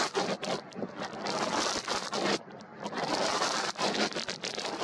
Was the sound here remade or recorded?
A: recorded